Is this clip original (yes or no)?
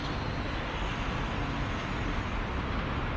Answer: yes